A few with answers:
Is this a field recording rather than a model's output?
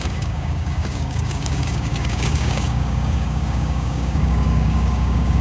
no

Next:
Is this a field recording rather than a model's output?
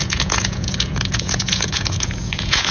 no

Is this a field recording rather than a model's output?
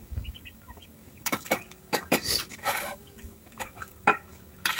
no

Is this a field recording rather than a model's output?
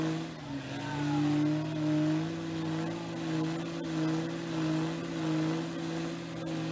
yes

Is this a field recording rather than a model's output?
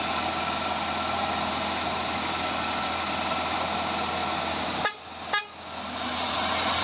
yes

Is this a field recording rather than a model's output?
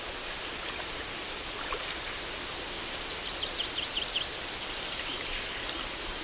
yes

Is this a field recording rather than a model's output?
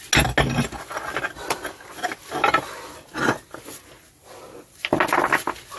yes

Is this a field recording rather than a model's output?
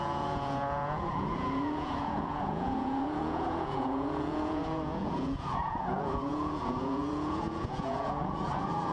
no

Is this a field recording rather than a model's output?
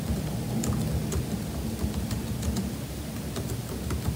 yes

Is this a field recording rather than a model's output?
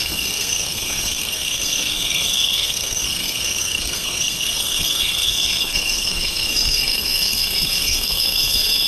no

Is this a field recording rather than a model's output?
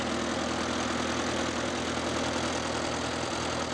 yes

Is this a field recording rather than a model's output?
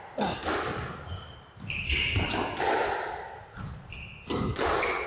yes